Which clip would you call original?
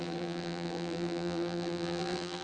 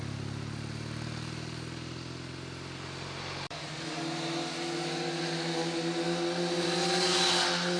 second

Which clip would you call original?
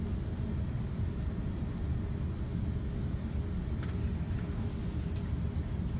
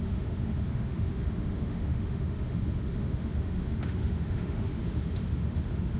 first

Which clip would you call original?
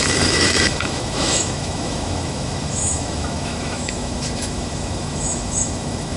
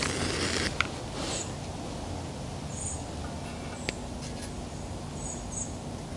second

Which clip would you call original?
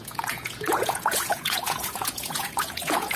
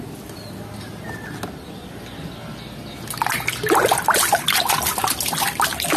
second